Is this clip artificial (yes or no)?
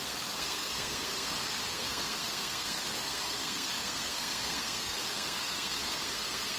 yes